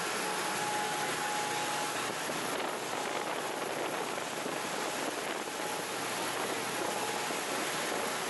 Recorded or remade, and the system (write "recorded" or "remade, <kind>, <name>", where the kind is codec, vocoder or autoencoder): recorded